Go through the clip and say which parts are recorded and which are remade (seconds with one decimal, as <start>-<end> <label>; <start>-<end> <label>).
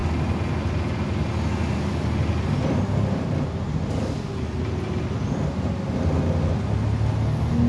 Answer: 0.0-7.7 recorded